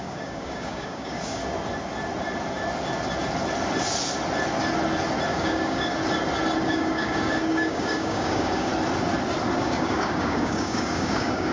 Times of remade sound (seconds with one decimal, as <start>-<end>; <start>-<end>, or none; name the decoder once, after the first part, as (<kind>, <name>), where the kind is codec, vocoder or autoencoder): 0.0-1.4 (codec, DAC); 5.3-6.0; 6.6-8.7; 9.6-11.5